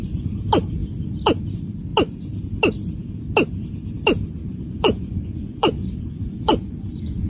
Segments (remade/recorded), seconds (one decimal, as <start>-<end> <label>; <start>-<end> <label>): 0.0-4.4 recorded; 4.4-7.3 remade